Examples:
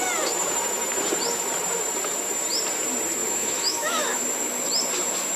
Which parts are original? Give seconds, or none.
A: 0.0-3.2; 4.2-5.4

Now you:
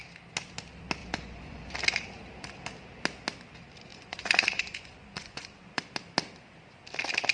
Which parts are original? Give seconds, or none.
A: 0.0-1.0; 1.7-3.9; 5.8-7.3